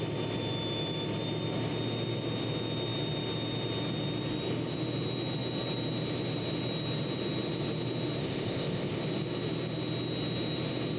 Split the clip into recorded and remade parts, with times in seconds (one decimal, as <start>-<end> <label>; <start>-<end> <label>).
0.0-8.2 recorded; 8.2-9.0 remade; 9.0-11.0 recorded